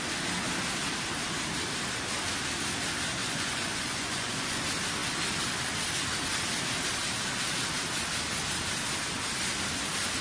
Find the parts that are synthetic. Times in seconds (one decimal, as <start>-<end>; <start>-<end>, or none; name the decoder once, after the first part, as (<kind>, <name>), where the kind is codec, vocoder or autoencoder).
3.2-4.6 (vocoder, Vocos)